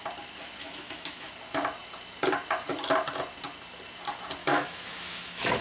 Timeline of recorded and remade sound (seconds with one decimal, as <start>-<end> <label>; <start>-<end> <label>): 0.0-0.6 recorded; 0.6-1.3 remade; 1.3-4.4 recorded; 4.4-5.6 remade